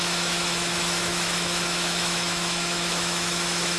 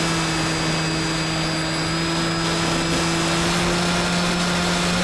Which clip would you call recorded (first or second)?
second